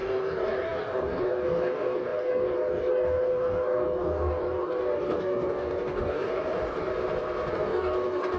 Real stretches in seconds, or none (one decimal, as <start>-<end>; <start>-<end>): 6.9-7.5